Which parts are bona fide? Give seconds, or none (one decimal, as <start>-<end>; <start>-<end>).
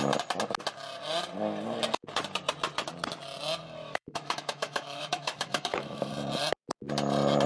0.0-3.8; 6.1-7.5